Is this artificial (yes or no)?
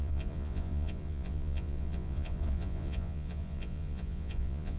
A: yes